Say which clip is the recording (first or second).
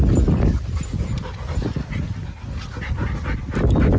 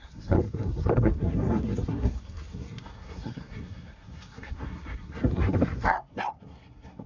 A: first